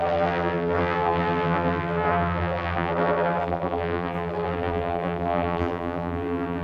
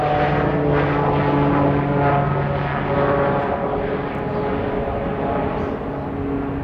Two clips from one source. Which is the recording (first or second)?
second